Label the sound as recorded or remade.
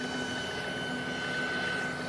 recorded